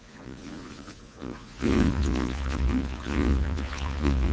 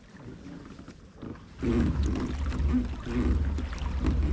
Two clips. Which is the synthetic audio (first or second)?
first